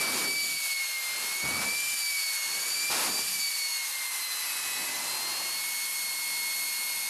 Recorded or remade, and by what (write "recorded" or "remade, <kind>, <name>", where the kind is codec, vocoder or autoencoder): recorded